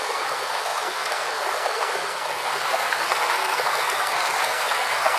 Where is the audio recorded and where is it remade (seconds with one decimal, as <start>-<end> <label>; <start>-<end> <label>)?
0.0-5.2 remade